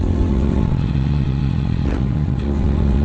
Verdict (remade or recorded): remade